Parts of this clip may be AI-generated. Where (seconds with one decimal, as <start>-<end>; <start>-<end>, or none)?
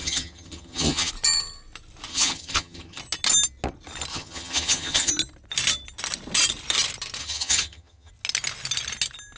0.0-1.1; 2.1-3.0; 4.1-5.1; 7.2-8.1